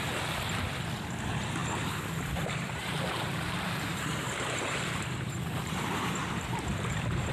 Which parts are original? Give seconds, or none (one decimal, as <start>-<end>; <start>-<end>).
0.0-1.6; 6.0-6.7

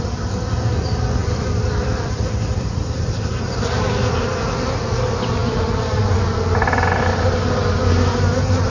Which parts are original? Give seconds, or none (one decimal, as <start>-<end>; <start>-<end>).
0.0-1.2; 3.9-5.4; 7.0-8.7

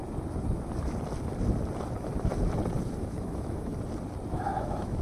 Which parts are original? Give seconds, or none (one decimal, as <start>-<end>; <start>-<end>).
0.0-3.0; 3.7-4.3

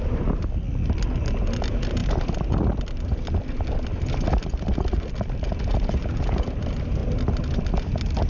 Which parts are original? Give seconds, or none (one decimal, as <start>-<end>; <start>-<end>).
0.0-8.3

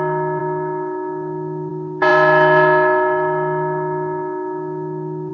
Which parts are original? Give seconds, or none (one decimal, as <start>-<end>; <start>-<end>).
0.0-5.3